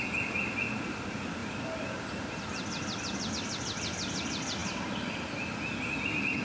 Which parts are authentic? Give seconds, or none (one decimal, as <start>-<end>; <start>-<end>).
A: 0.0-1.4; 3.3-4.6; 5.5-6.4